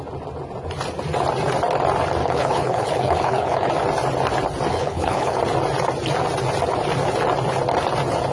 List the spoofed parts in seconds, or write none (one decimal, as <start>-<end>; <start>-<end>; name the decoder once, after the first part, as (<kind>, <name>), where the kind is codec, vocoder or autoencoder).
2.2-3.7 (codec, HILCodec); 4.7-5.4